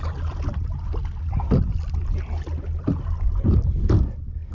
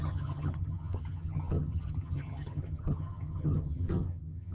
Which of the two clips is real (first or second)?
first